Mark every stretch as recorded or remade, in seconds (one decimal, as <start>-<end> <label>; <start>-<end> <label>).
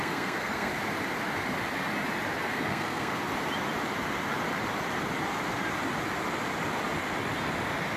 0.0-0.7 remade; 0.7-2.4 recorded; 2.4-3.1 remade; 3.1-8.0 recorded